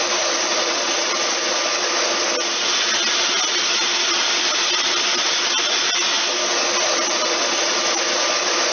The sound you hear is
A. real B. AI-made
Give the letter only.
A